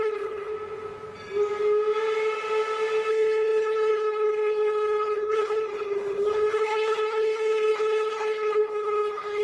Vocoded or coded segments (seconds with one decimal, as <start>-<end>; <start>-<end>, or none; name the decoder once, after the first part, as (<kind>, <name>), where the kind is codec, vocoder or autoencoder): 0.0-0.5 (codec, HILCodec); 3.1-9.4